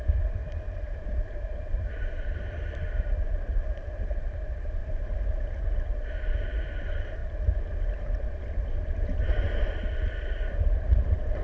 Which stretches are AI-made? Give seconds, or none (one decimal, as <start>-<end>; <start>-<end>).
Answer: 0.0-4.8; 6.4-7.2; 8.3-11.4